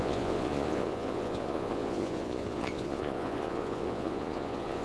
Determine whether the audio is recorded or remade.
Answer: remade